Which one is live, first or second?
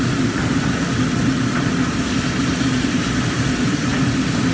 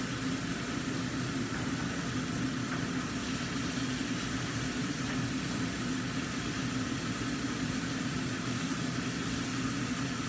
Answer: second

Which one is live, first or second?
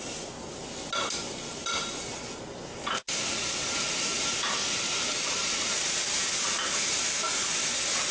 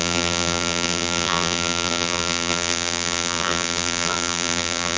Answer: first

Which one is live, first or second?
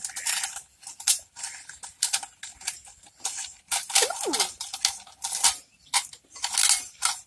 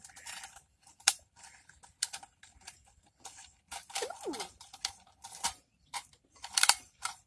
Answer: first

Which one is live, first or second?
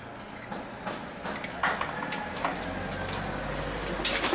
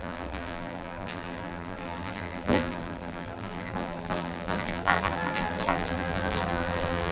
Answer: first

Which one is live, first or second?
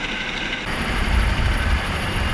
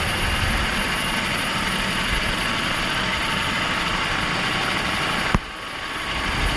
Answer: second